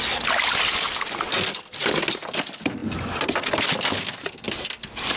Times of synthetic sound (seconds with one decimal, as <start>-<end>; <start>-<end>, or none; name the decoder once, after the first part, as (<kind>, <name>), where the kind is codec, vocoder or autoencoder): none